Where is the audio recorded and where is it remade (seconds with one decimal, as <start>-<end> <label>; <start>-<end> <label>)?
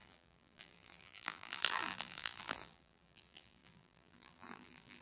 0.0-5.0 remade